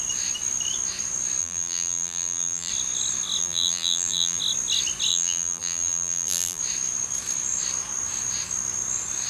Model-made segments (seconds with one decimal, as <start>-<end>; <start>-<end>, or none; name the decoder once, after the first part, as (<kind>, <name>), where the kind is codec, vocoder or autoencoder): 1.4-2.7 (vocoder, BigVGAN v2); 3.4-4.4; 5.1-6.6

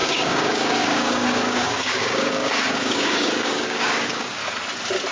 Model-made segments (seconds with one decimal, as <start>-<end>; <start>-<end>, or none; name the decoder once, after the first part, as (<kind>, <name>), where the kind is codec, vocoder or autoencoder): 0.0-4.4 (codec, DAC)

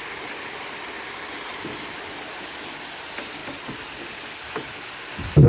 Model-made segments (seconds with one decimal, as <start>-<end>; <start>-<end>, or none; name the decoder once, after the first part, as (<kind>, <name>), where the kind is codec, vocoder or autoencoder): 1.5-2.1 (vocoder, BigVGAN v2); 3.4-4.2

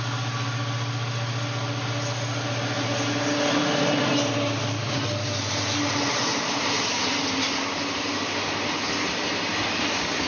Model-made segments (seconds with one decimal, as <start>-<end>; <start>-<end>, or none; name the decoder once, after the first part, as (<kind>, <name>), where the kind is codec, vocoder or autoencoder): none

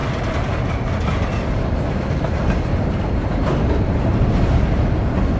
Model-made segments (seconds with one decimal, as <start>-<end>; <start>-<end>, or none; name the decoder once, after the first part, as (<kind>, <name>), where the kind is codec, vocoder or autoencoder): none